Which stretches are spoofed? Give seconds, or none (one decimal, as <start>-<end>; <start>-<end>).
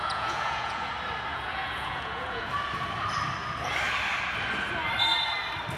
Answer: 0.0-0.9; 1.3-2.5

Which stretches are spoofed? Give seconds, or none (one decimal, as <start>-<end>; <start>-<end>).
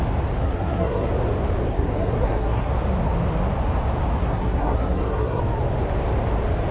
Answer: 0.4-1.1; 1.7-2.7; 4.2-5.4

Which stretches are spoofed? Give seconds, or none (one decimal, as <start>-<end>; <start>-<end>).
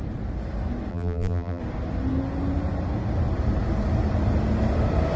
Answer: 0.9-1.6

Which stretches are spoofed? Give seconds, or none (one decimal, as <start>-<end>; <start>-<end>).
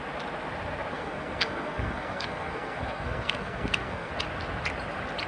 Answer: 0.9-4.1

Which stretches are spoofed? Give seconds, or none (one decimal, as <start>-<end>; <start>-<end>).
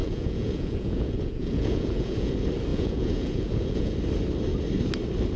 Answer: 0.0-2.3; 2.7-3.9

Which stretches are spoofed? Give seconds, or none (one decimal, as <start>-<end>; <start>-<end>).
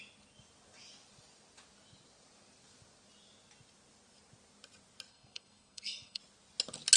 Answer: 5.1-6.2